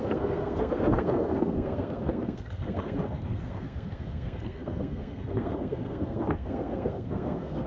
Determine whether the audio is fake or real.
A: fake